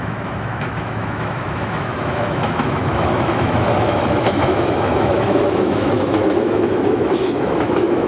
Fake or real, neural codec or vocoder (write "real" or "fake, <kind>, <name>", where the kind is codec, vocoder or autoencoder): fake, autoencoder, DAC-VAE